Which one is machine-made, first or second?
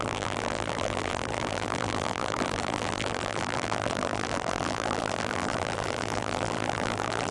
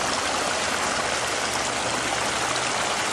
first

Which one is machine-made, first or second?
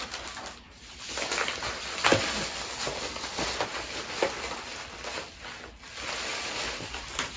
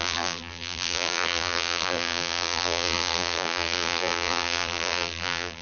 second